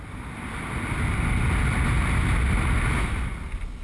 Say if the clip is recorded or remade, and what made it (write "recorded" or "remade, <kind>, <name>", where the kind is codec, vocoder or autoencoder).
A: recorded